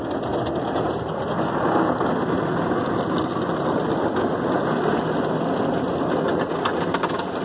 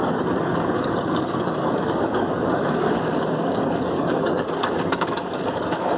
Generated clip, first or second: second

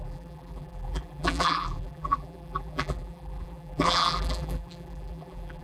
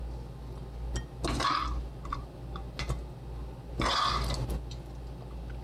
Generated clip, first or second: first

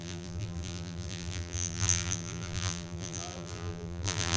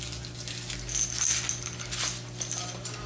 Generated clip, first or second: first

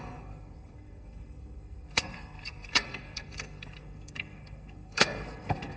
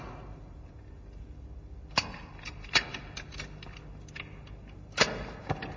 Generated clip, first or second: first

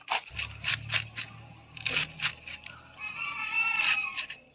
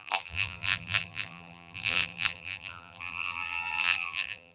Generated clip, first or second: second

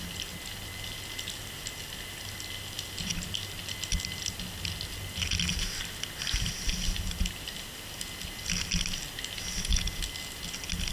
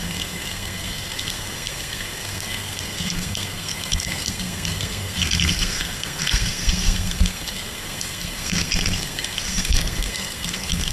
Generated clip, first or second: second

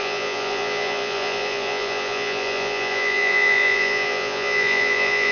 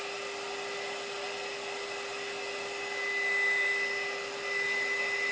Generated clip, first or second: first